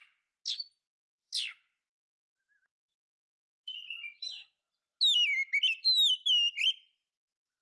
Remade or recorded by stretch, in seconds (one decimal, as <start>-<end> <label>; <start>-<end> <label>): 0.0-0.6 recorded; 0.6-1.3 remade; 1.3-2.9 recorded; 2.9-4.3 remade; 4.3-6.7 recorded; 6.7-7.6 remade